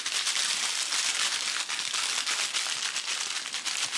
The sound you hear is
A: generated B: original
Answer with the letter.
B